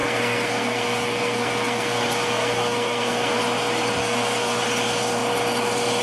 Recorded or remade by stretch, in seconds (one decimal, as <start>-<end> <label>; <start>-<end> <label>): 0.0-3.4 remade; 3.4-4.0 recorded; 4.0-4.6 remade; 4.6-6.0 recorded